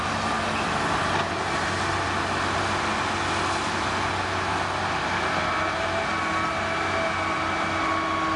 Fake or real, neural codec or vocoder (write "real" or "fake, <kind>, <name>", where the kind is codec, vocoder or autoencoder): real